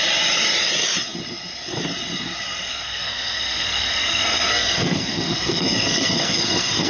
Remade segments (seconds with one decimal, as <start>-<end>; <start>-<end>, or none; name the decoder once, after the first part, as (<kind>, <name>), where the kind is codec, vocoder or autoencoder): 2.7-6.9 (codec, SNAC)

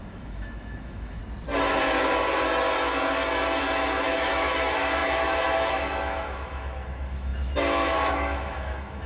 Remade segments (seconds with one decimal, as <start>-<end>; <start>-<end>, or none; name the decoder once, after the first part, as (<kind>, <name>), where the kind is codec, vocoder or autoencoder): 0.0-1.2 (autoencoder, DAC-VAE); 3.6-9.1